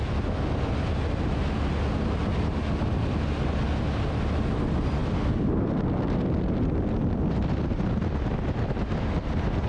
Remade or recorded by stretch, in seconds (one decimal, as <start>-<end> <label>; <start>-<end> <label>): 0.0-9.7 recorded